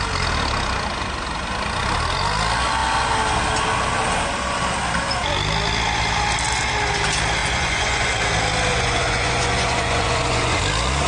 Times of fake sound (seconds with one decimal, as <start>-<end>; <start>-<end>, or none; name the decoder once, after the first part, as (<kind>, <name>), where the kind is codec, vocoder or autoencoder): 7.4-8.1 (vocoder, Vocos); 8.7-10.6